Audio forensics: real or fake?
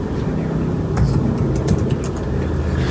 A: real